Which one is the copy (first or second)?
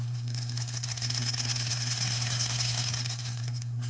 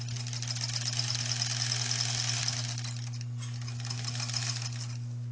first